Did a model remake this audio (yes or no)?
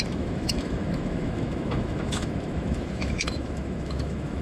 yes